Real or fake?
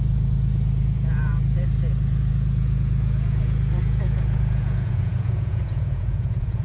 fake